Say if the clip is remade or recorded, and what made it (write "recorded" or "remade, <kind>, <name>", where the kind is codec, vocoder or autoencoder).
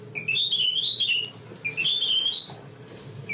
recorded